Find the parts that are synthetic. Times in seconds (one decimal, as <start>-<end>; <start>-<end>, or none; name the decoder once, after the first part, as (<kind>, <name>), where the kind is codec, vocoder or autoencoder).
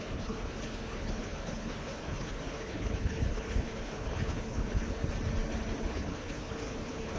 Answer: 0.0-5.0 (codec, HILCodec); 5.8-7.2